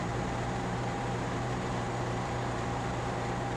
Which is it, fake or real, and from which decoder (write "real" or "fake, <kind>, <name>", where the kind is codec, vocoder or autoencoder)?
fake, vocoder, BigVGAN v2